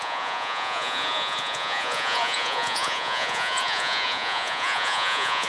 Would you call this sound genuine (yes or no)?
no